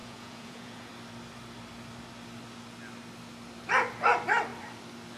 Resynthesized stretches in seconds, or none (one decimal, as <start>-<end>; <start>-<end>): 0.0-0.9